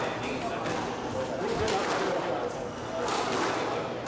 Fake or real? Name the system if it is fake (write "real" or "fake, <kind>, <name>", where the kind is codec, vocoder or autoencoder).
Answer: real